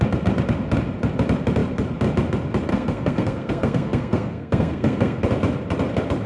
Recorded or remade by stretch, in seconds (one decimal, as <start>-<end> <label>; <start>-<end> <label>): 0.0-2.7 recorded; 2.7-5.2 remade; 5.2-6.3 recorded